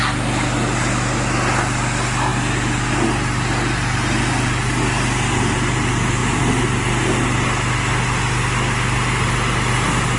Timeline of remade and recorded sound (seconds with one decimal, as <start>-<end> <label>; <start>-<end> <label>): 0.0-10.2 recorded